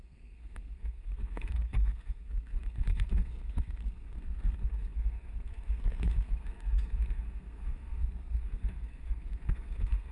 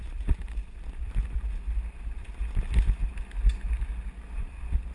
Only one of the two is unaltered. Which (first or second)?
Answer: second